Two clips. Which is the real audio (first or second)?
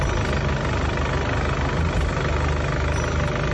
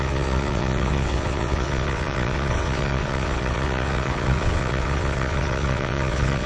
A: first